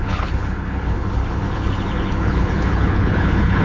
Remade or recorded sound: remade